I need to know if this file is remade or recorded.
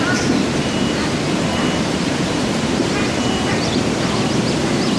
remade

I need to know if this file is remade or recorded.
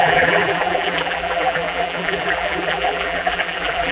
remade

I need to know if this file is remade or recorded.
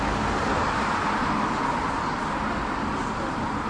recorded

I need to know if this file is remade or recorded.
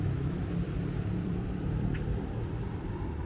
remade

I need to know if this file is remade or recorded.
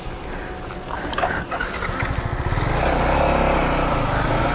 recorded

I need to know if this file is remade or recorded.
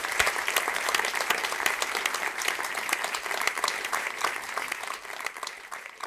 remade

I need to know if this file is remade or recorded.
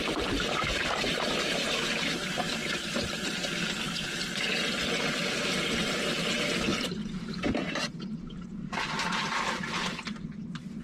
remade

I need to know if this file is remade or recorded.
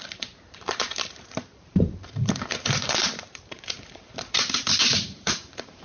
remade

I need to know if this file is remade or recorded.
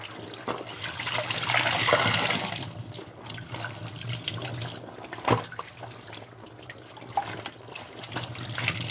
recorded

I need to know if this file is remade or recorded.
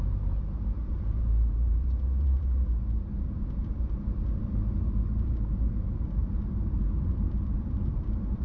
remade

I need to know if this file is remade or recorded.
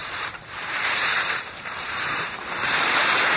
remade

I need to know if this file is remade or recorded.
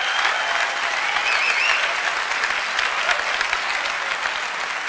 recorded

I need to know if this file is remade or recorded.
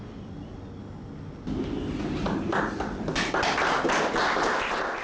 recorded